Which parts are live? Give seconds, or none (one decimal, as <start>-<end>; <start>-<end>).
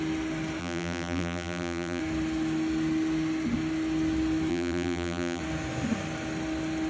0.0-0.6; 2.0-4.5; 5.4-6.9